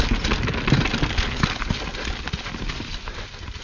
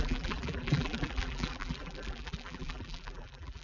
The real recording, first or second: first